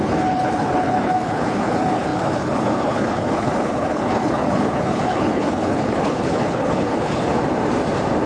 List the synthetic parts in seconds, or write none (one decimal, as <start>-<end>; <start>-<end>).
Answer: 0.0-7.3